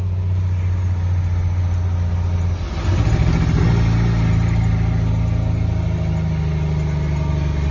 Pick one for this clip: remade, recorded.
recorded